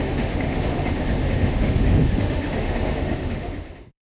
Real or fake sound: fake